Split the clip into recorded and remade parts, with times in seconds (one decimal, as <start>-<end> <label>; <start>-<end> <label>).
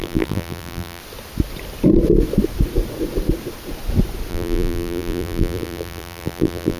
0.0-1.0 remade; 1.0-4.3 recorded; 4.3-6.8 remade